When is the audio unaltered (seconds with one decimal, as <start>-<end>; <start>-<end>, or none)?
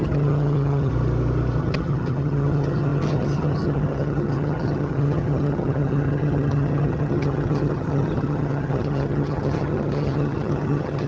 0.9-1.6